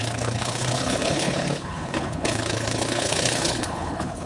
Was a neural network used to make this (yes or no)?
yes